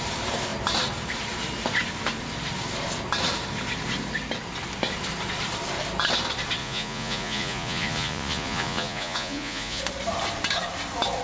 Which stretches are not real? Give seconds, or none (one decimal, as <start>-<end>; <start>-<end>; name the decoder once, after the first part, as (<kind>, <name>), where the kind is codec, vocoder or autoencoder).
6.6-9.8 (vocoder, Vocos)